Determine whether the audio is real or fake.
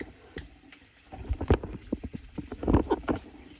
fake